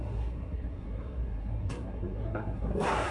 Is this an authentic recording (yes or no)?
no